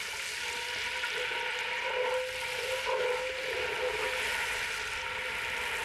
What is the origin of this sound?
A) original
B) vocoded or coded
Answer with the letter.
A